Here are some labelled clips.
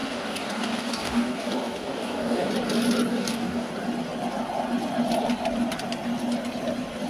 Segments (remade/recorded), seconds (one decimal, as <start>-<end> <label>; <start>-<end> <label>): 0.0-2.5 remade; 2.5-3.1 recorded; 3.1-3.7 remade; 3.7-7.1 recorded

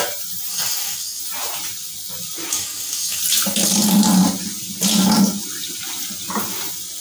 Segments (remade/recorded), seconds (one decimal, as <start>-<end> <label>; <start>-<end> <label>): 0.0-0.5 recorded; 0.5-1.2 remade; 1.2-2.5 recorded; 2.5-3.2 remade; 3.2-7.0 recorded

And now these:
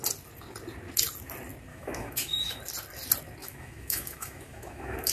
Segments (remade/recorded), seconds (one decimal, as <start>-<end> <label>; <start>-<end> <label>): 0.0-1.7 recorded; 1.7-2.6 remade; 2.6-3.4 recorded; 3.4-5.1 remade